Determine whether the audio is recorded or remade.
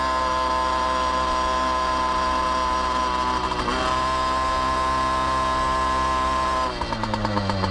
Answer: recorded